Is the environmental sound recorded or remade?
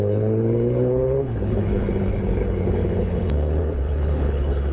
remade